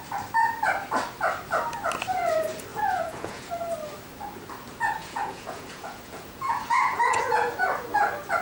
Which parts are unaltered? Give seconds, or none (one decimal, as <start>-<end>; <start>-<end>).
0.0-2.7; 3.5-5.0; 7.5-8.4